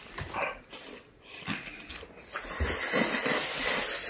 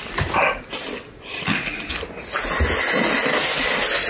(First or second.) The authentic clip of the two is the second